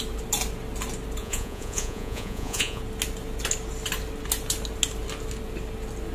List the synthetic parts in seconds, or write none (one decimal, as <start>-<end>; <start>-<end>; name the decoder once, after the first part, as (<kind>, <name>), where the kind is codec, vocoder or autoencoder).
1.2-2.8 (vocoder, Vocos)